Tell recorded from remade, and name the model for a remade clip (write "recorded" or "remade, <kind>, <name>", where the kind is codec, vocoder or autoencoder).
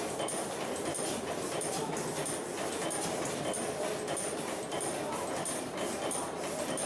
recorded